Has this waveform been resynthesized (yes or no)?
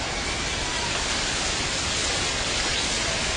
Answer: no